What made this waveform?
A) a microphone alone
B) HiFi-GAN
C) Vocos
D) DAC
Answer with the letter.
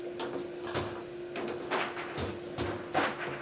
A